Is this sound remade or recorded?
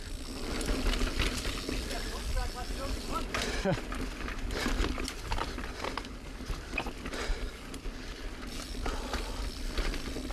recorded